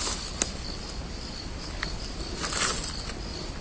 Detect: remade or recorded recorded